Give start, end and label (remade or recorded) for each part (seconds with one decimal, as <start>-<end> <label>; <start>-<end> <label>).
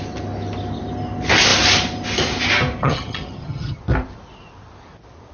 0.0-2.8 recorded; 2.8-3.8 remade; 3.8-5.3 recorded